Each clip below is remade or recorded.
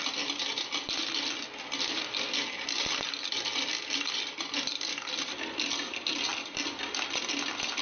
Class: recorded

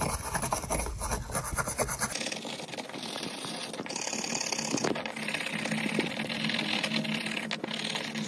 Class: recorded